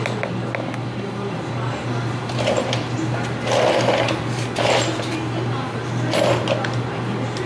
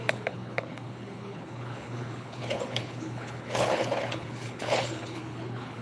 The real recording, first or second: first